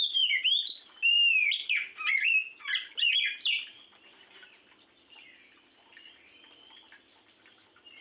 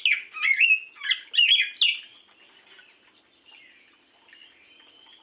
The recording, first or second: second